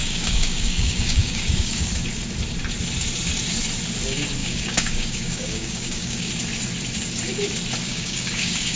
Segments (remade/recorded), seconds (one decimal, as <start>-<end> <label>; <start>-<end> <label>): 0.0-1.9 remade; 1.9-4.4 recorded; 4.4-6.3 remade; 6.3-7.9 recorded; 7.9-8.8 remade